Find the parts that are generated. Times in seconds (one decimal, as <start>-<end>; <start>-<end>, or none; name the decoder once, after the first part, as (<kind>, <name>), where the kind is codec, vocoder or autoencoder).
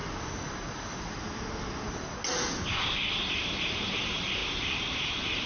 3.3-5.5 (vocoder, BigVGAN v2)